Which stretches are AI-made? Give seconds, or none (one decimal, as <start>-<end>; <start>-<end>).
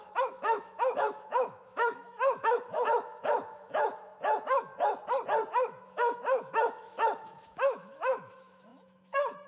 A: 0.0-4.7; 5.5-9.5